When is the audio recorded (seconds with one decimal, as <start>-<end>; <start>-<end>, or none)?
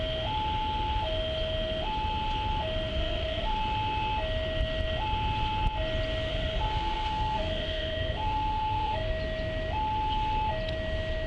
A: 0.0-2.9; 3.6-6.3; 9.1-11.3